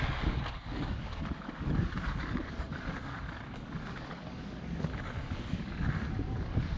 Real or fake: fake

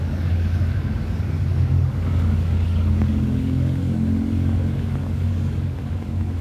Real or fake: fake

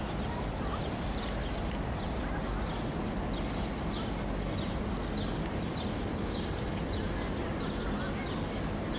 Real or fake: real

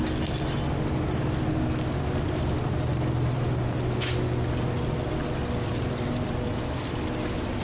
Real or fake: real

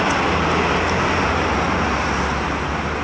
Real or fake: real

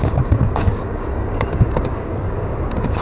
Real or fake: fake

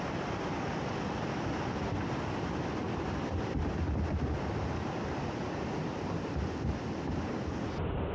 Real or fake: real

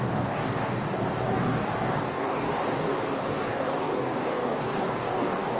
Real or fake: fake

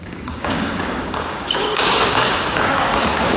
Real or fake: fake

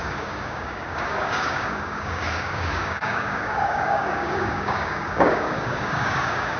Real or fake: fake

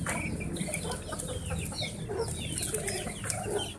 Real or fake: real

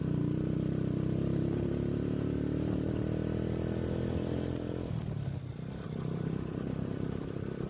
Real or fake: real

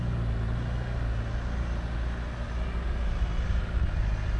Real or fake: real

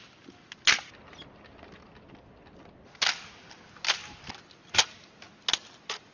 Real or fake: real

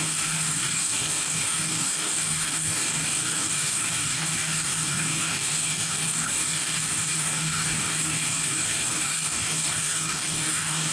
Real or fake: fake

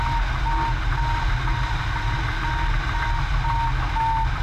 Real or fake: real